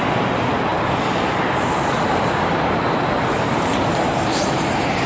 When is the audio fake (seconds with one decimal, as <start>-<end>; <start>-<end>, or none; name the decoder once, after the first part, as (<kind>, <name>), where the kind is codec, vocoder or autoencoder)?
none